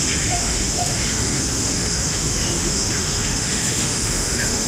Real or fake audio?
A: fake